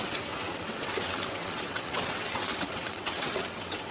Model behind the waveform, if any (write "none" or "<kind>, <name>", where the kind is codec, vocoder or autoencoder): vocoder, WaveNeXt